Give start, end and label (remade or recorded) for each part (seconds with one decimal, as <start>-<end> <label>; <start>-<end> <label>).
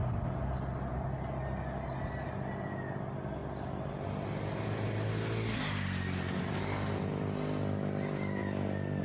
0.0-9.0 recorded